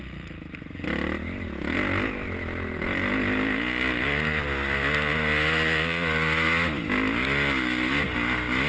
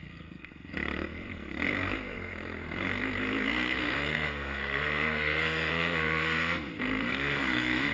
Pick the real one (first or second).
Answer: first